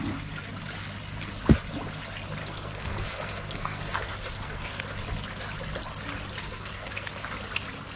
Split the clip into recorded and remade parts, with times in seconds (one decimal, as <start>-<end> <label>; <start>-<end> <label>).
0.0-2.4 recorded; 2.4-4.8 remade; 4.8-6.4 recorded; 6.4-7.1 remade; 7.1-8.0 recorded